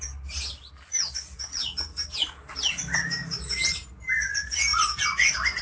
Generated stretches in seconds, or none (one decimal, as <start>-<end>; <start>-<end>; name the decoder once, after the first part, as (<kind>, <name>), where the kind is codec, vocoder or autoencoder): none